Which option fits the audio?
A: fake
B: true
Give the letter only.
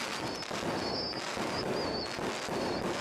B